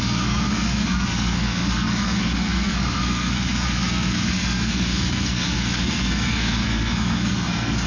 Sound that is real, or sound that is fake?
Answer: fake